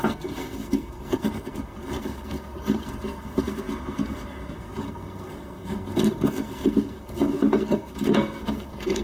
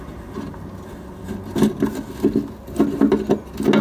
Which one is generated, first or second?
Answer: first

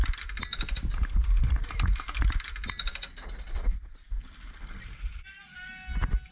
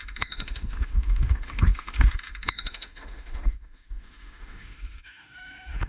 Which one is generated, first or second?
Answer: second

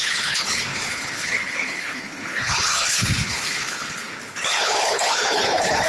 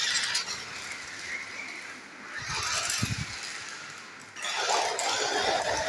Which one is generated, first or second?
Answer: first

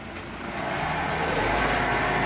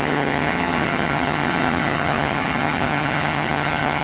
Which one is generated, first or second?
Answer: second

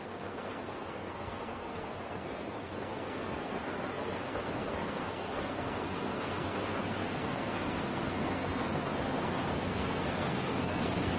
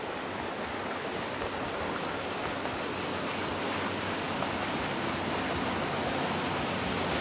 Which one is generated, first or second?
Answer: first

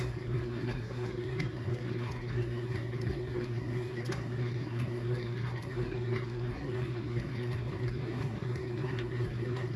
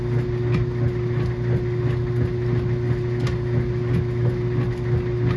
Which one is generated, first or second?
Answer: first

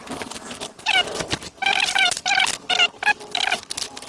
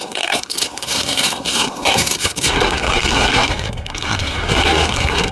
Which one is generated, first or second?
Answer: second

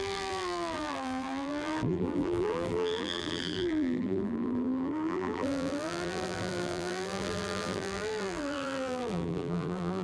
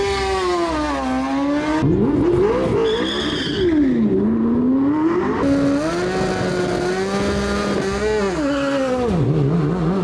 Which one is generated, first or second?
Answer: first